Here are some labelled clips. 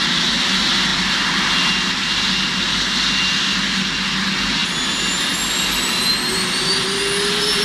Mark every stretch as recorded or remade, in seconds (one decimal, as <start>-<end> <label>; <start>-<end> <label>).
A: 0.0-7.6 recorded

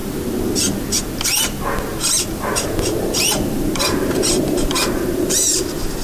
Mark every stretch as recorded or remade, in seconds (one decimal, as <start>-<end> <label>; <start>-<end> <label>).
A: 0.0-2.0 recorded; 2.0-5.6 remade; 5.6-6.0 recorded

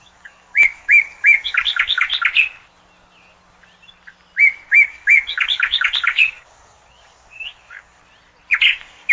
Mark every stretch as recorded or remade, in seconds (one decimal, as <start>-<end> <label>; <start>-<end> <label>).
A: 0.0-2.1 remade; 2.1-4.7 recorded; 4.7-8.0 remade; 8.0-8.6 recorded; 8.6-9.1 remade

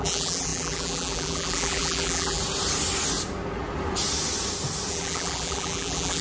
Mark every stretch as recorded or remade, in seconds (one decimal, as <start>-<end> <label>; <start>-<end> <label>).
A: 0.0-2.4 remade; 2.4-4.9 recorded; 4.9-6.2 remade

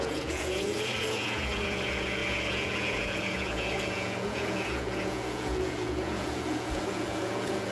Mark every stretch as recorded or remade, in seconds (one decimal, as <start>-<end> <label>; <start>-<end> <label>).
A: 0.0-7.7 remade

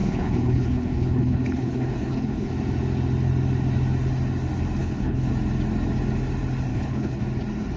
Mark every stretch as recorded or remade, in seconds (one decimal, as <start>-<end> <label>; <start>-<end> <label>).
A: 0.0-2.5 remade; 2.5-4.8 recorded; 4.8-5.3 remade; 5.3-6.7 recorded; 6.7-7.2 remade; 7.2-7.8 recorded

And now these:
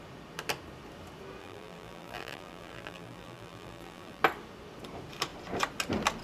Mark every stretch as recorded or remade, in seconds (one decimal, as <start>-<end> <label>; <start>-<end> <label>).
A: 0.0-1.4 recorded; 1.4-4.2 remade; 4.2-6.2 recorded

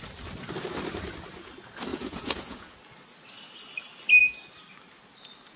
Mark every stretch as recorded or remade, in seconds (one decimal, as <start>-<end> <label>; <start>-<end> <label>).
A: 0.0-1.9 recorded; 1.9-2.8 remade; 2.8-5.6 recorded